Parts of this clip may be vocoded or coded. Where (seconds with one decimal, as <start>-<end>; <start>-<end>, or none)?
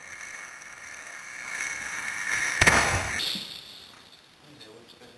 0.0-3.1